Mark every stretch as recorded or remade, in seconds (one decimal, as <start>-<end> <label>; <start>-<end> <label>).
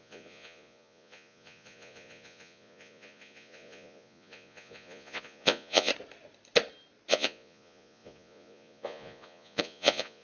0.0-5.9 remade; 5.9-7.1 recorded; 7.1-10.2 remade